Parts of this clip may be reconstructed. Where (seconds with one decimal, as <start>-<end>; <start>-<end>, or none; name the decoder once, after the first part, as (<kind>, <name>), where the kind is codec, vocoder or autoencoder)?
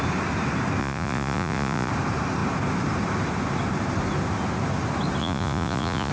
0.8-1.9 (vocoder, Vocos); 5.2-6.1